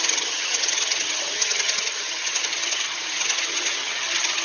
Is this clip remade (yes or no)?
yes